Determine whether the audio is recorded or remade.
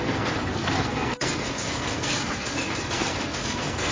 remade